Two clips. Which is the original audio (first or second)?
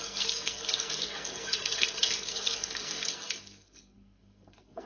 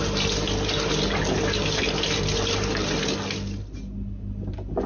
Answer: second